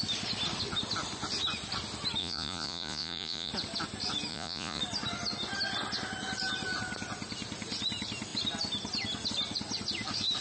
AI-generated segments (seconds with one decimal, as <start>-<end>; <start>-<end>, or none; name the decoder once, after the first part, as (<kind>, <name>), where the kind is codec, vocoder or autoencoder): 2.2-3.5 (vocoder, Vocos); 4.3-4.8